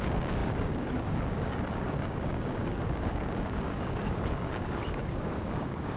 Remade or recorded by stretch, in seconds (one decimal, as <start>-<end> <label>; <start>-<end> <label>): 0.0-6.0 remade